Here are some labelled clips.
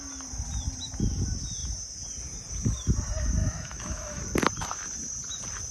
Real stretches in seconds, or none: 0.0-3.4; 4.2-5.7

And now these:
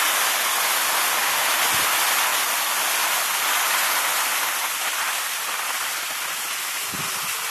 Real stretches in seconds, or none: 0.0-7.5

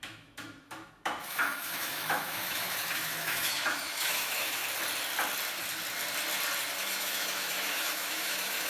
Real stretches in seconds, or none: 4.6-6.8

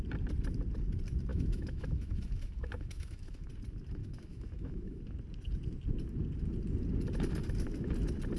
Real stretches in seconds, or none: 0.0-1.3; 3.5-4.0; 5.0-8.4

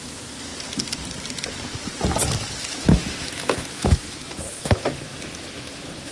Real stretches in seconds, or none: 0.5-2.7